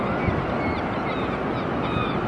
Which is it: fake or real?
real